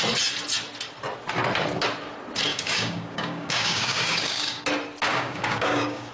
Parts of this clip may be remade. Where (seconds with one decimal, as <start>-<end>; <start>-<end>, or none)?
2.5-4.6; 5.1-6.1